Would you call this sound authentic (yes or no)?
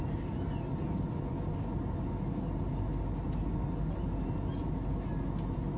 yes